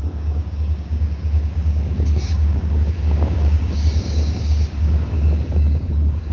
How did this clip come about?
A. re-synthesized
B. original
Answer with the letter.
A